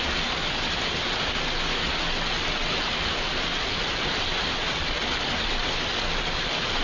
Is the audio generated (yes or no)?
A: no